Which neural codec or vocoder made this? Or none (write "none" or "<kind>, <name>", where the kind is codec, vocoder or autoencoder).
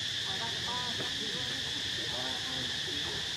none